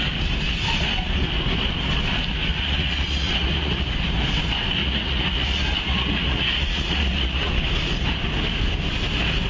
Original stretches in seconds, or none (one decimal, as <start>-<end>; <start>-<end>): 0.0-2.5; 3.9-4.8; 7.5-9.5